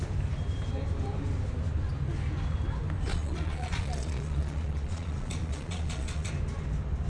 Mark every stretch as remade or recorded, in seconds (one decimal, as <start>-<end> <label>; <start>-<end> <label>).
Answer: 0.0-3.1 recorded; 3.1-6.3 remade; 6.3-7.1 recorded